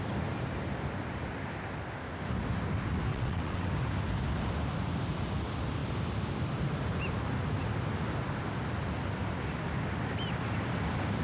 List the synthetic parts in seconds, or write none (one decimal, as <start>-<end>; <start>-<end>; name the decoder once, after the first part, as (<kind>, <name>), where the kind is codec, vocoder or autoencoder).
3.1-3.7 (vocoder, WaveNeXt)